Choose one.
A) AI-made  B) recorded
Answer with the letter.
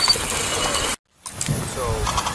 B